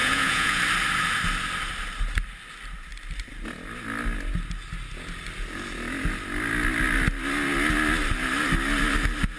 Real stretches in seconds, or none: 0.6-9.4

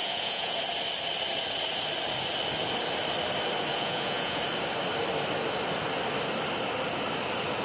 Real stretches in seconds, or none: 0.6-3.7; 4.4-7.6

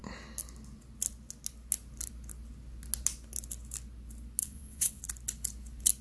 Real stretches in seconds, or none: 0.0-4.4; 5.0-6.0

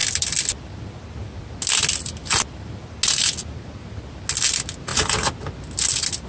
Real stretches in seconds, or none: 0.0-6.3

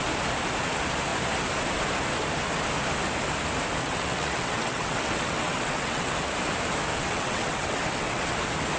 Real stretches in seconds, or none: 0.0-3.8; 6.1-6.9; 8.4-8.8

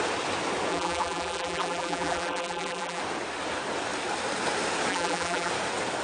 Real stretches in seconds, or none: 0.0-0.7; 3.0-4.9; 5.5-6.0

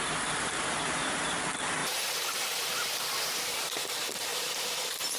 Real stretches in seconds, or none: 0.0-1.8; 3.8-4.3

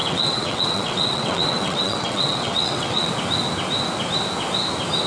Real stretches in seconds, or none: 3.1-5.1